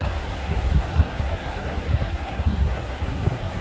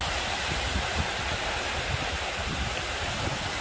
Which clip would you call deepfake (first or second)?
first